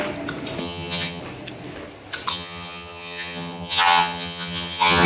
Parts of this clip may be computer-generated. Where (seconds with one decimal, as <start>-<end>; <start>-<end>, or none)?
0.6-1.2; 2.3-5.1